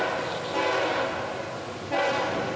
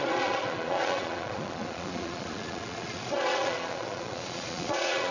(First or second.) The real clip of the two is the first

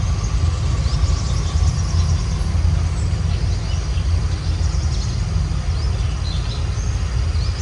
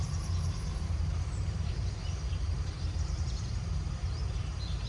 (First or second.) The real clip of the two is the first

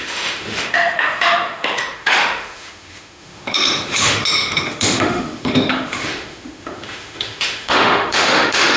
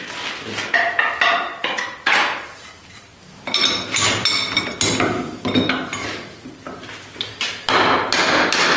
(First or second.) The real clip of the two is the second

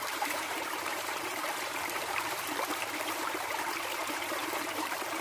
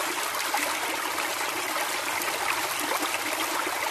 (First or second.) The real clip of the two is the second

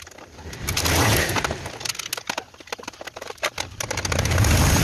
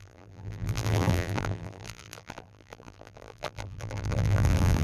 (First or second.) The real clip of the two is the first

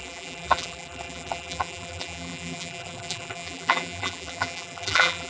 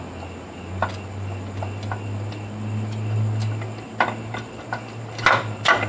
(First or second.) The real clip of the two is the second